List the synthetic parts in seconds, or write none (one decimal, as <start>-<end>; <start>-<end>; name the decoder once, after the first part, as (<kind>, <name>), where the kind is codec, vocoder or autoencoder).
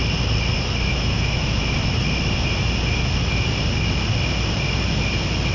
0.9-1.6 (autoencoder, DAC-VAE)